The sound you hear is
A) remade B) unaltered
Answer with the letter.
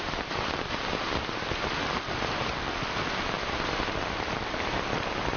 A